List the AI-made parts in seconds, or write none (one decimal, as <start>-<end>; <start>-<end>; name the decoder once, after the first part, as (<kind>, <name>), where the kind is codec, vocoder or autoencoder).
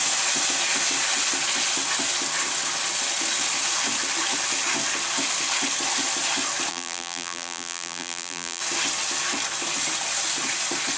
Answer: 6.7-8.6 (vocoder, BigVGAN v2)